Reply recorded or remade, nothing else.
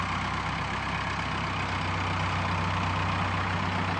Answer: recorded